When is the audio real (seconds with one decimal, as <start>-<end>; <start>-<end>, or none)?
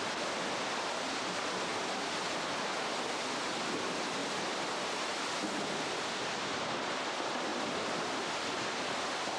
0.0-9.4